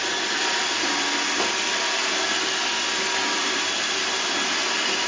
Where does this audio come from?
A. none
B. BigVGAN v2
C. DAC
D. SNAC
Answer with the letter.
A